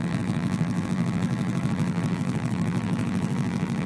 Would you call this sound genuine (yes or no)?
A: no